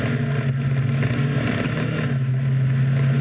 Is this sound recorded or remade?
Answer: recorded